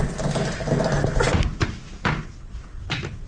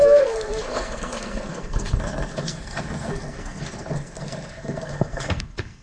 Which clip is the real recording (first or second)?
first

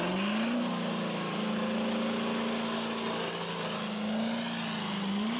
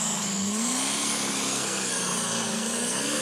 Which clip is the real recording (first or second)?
first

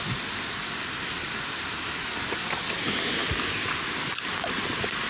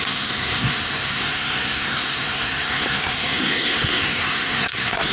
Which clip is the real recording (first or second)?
first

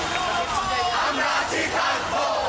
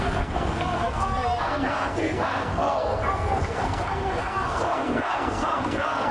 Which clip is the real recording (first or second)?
first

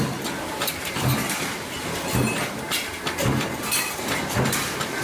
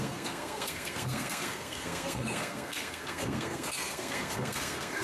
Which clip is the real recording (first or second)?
first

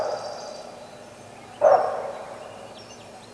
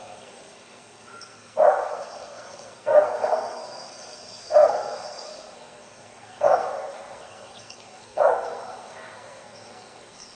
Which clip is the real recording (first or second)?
first